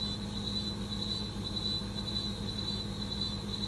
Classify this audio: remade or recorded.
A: recorded